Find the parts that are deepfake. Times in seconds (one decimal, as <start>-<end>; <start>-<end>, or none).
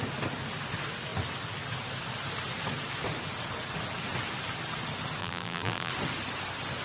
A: 5.2-5.9